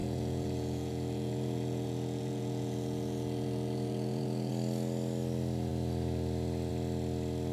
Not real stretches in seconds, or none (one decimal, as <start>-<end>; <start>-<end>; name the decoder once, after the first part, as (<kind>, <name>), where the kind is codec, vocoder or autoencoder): 0.0-4.5 (vocoder, Vocos)